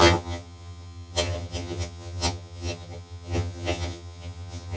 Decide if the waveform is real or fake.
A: fake